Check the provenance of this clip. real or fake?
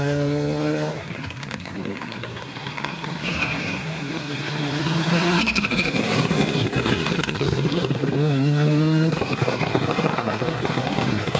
fake